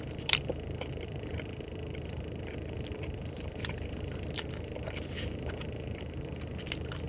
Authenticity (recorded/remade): remade